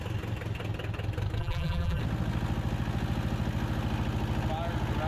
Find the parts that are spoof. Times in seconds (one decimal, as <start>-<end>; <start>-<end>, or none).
1.4-2.0